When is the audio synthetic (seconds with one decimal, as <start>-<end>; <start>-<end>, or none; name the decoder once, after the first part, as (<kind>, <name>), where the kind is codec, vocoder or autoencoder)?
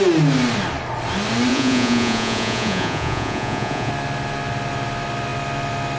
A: 1.5-3.9 (vocoder, Vocos)